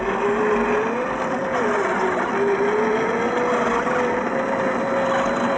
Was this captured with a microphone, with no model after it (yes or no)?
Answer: yes